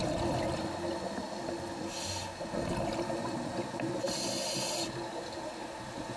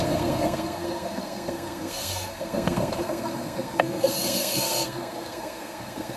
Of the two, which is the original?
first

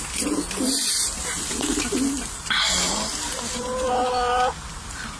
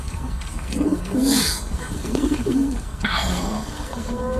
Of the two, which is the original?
first